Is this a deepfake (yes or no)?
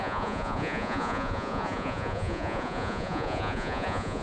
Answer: yes